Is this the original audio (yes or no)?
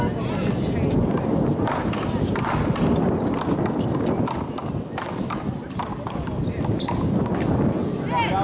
yes